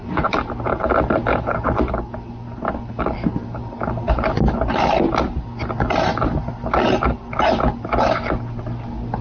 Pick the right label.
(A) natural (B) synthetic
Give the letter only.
A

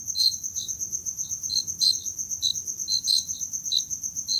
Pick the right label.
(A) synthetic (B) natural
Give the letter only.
B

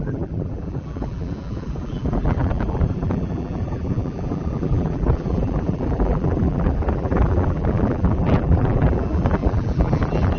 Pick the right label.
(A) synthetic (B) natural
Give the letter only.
A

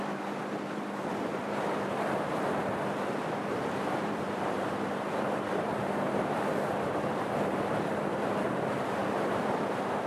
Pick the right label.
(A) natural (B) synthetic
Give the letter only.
B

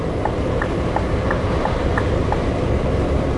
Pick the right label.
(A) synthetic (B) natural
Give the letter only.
B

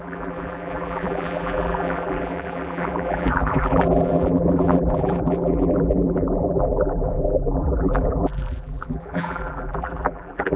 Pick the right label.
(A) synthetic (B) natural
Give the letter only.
A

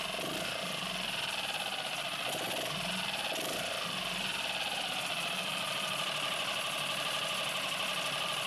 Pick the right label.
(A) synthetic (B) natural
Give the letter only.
B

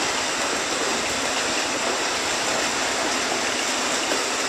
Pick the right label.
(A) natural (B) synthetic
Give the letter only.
A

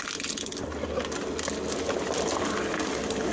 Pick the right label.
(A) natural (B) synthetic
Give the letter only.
A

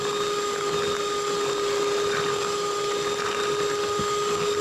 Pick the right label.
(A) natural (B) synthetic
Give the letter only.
A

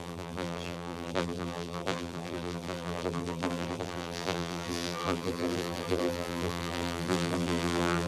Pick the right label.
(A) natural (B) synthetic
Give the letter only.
B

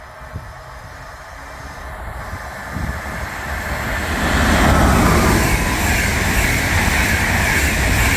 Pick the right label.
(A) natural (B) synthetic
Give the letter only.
A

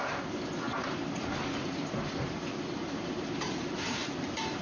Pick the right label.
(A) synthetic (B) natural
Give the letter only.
A